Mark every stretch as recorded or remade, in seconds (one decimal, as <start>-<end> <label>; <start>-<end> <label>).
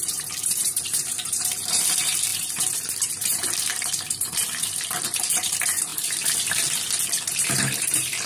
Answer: 0.0-5.9 remade; 5.9-7.3 recorded; 7.3-8.3 remade